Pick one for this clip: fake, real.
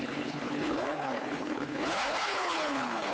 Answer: fake